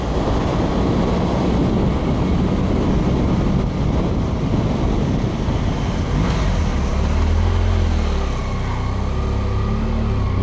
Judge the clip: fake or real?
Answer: real